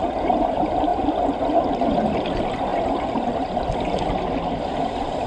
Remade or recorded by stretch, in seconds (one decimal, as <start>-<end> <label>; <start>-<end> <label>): 0.0-2.7 recorded; 2.7-3.7 remade; 3.7-5.3 recorded